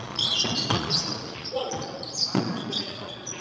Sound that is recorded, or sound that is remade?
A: remade